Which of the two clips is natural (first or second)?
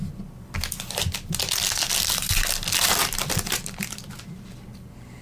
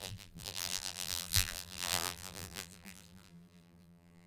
first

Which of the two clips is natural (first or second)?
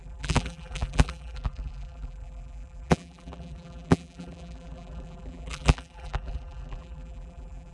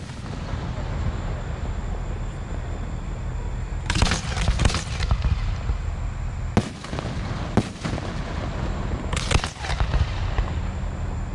second